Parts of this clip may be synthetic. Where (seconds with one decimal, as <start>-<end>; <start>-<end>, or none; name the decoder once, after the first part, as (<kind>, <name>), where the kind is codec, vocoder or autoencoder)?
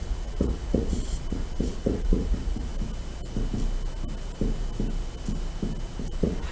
0.0-2.7 (vocoder, Vocos); 6.0-6.5